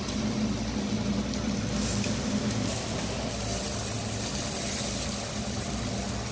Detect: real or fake real